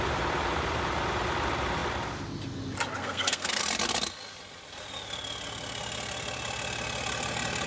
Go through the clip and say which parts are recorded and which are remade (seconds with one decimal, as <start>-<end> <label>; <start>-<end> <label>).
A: 0.0-3.0 recorded; 3.0-3.6 remade; 3.6-7.7 recorded